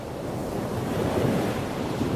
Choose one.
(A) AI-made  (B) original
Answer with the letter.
A